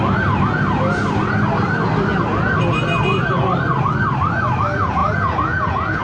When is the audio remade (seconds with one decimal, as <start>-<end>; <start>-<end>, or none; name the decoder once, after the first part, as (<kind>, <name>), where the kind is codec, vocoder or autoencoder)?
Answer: 5.0-6.0 (vocoder, Vocos)